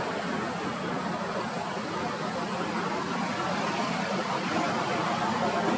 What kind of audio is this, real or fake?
real